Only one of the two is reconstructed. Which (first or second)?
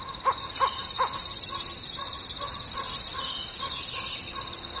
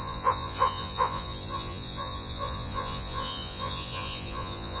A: second